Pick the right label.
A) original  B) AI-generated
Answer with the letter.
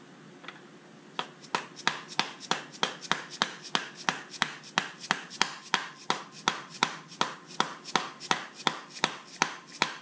A